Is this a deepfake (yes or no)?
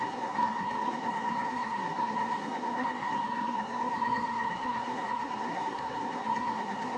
yes